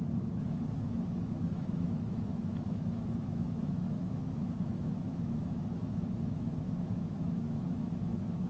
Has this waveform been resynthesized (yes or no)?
yes